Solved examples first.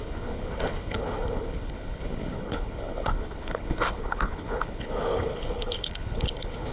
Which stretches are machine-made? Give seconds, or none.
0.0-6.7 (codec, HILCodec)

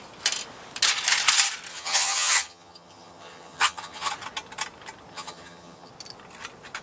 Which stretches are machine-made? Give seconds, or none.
1.7-4.1 (vocoder, HiFi-GAN); 5.1-5.9

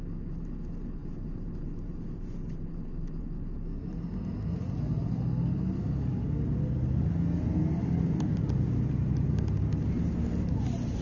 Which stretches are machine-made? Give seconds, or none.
1.0-3.2 (vocoder, BigVGAN v2)

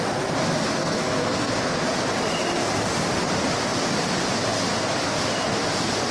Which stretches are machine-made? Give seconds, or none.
0.8-1.5 (codec, SNAC)

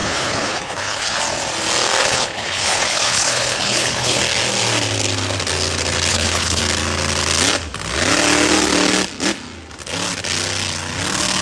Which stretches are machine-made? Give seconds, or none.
0.0-1.2 (codec, HILCodec); 2.0-4.2; 6.1-6.6

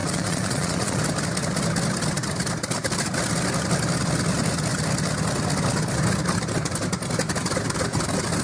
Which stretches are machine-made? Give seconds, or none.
0.0-1.0 (vocoder, Vocos)

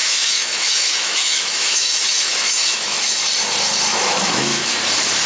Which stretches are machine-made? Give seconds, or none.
0.0-3.2 (autoencoder, DAC-VAE); 3.9-4.7

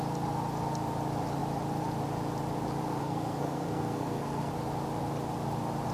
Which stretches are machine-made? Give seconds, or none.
3.0-4.5 (codec, SNAC)